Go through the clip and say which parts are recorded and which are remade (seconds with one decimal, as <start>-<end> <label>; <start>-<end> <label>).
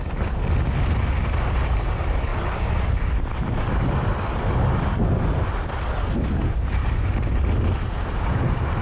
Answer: 0.0-8.8 recorded